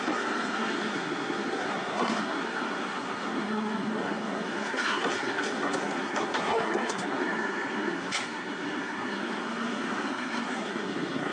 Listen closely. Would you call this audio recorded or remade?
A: remade